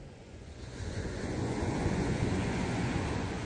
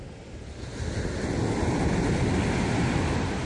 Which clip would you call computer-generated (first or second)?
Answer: first